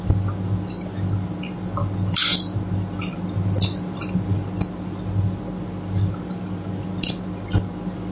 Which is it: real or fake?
real